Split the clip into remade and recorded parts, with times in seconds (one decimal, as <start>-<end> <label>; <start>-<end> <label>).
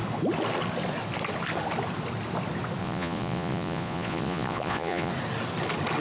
0.0-2.8 recorded; 2.8-5.1 remade; 5.1-6.0 recorded